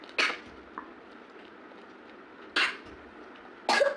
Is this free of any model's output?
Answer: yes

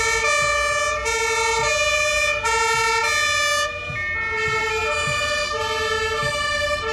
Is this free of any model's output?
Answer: yes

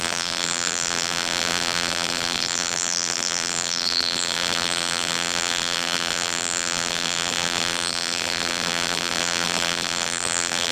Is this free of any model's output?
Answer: no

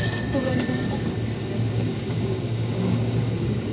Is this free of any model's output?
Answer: no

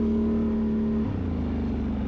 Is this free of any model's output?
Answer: yes